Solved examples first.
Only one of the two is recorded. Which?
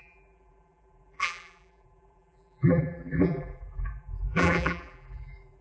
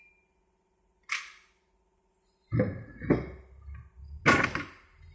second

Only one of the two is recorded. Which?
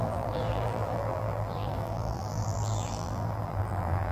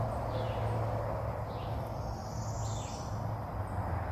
second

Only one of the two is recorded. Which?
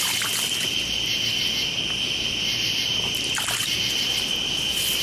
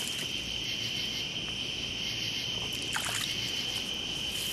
first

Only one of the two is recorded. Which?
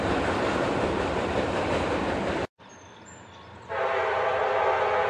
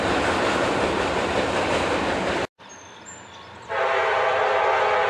second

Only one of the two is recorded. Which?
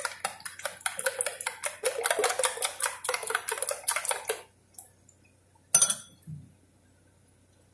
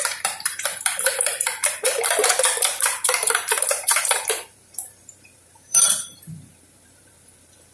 first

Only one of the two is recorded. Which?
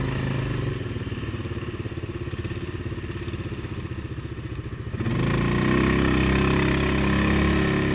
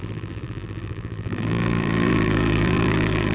first